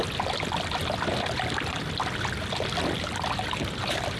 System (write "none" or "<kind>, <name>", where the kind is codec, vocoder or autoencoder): none